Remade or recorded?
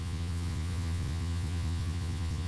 remade